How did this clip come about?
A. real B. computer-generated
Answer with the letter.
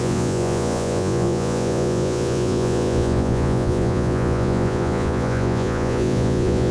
B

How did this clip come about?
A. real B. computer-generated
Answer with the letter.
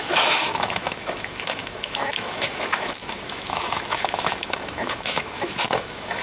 B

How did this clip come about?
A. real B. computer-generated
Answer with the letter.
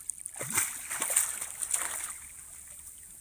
A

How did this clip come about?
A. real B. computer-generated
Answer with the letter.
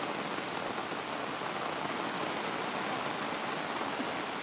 A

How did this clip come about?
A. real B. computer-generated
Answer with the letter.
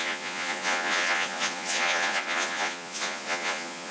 B